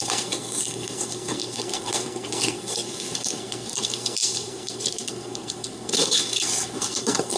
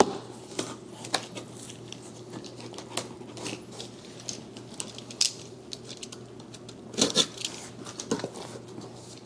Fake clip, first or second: first